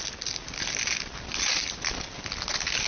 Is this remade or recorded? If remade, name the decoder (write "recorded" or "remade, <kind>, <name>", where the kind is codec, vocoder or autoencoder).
recorded